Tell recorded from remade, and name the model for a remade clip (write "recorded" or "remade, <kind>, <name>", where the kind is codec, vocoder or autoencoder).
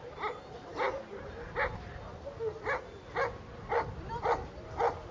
recorded